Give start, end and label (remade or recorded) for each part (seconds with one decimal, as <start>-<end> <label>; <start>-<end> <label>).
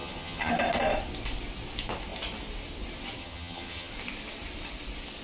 0.0-0.5 remade; 0.5-3.2 recorded; 3.2-3.9 remade; 3.9-5.2 recorded